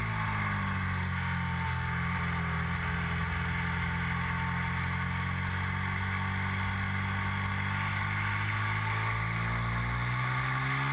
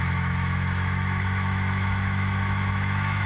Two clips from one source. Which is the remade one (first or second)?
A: second